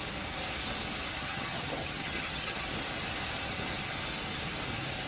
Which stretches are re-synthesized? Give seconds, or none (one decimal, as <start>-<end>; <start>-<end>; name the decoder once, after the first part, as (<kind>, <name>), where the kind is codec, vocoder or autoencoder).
1.2-2.6 (vocoder, HiFi-GAN)